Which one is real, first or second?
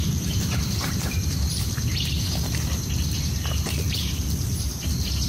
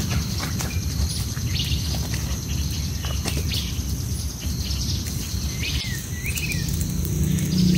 second